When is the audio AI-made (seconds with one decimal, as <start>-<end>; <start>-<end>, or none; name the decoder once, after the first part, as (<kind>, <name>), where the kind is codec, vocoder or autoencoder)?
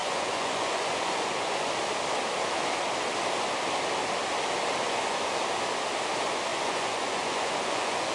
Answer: 0.0-1.7 (vocoder, Vocos); 4.8-5.4; 6.5-8.1